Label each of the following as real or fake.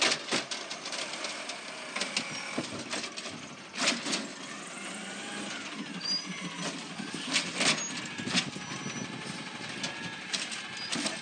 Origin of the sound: real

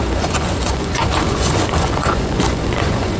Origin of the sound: fake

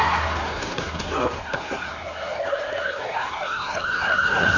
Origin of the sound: fake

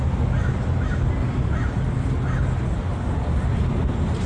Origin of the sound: real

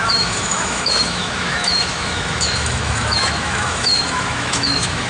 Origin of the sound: fake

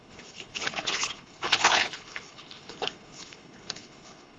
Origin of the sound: fake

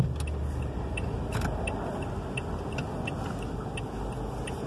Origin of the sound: real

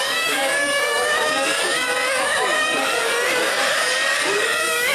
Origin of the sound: fake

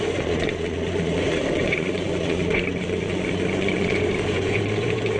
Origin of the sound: fake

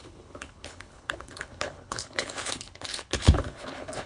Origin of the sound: fake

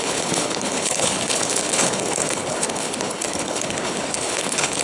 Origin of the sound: fake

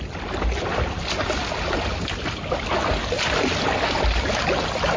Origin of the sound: real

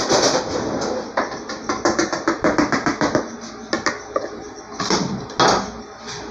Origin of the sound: real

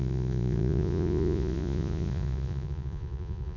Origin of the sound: fake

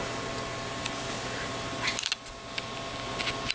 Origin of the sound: real